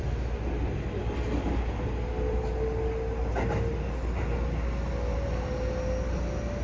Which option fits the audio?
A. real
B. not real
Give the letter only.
A